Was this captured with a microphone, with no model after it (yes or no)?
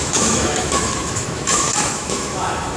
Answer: no